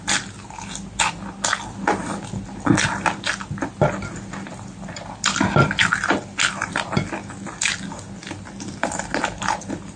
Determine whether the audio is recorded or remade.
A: recorded